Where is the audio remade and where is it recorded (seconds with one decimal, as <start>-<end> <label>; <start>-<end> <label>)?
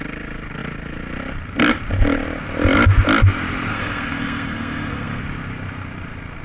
0.0-3.7 recorded; 3.7-5.2 remade; 5.2-6.4 recorded